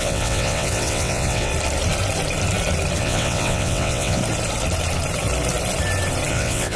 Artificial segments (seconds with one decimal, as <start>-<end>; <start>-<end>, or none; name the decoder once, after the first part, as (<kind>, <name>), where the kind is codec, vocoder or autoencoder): 0.0-1.5 (vocoder, WaveNeXt); 3.0-4.2; 6.3-6.8